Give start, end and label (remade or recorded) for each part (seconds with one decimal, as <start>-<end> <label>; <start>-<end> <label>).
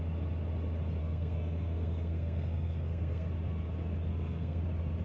0.0-1.0 recorded; 1.0-3.3 remade; 3.3-4.1 recorded; 4.1-4.6 remade; 4.6-5.0 recorded